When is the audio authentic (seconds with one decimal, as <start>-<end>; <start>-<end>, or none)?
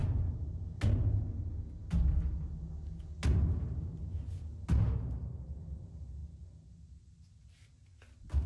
0.0-8.5